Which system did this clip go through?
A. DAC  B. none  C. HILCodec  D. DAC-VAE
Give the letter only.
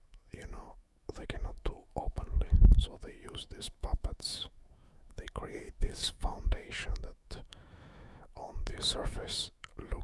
D